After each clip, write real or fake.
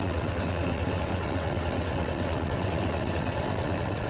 fake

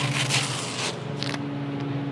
real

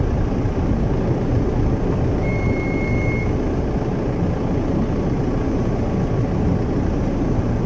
real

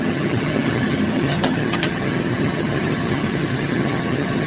fake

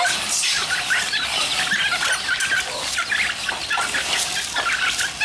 real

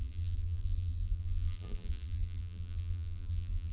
fake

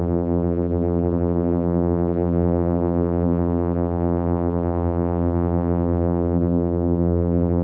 fake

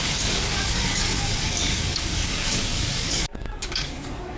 fake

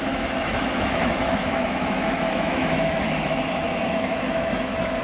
fake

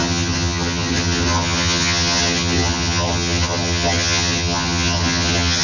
fake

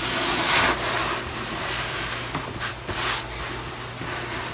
real